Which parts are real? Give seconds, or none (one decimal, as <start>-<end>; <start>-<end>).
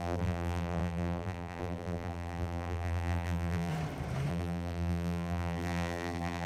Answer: 3.7-4.3